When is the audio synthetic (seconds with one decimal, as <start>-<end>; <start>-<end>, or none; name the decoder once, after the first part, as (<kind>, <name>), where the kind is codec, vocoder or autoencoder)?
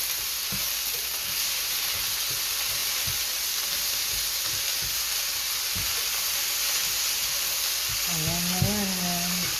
none